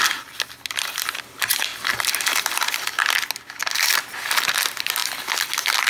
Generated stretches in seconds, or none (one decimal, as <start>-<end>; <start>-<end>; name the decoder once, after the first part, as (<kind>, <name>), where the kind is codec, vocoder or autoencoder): none

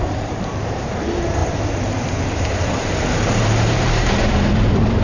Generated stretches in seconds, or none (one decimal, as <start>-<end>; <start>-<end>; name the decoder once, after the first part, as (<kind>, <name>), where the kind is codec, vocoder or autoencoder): 0.0-5.0 (vocoder, BigVGAN v2)

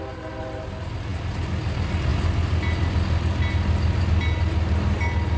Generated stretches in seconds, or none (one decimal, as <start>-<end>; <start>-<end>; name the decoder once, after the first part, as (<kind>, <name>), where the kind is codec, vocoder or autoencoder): none

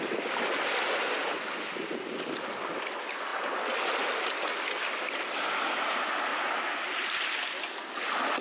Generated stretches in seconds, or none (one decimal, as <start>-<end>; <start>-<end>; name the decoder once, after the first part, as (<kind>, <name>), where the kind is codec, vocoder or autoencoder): 6.3-7.3 (vocoder, BigVGAN v2)

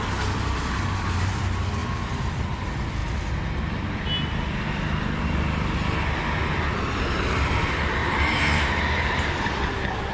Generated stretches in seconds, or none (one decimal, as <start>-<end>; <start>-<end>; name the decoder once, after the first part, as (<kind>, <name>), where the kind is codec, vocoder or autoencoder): 1.8-2.3 (vocoder, BigVGAN v2); 8.0-9.3

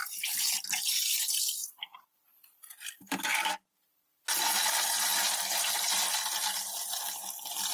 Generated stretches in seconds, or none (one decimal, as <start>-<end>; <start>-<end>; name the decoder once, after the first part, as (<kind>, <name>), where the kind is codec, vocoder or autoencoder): 0.0-1.8 (vocoder, BigVGAN v2)

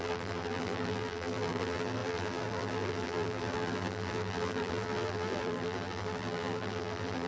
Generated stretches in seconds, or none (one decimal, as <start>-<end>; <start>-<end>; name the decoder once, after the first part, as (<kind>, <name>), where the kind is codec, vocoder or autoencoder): 0.0-7.3 (vocoder, BigVGAN v2)